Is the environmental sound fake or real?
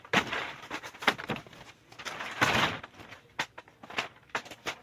real